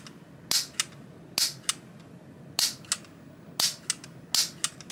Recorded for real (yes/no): yes